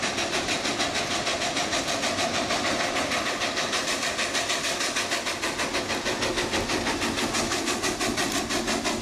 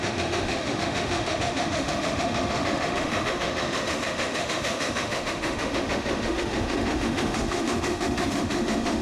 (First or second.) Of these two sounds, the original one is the first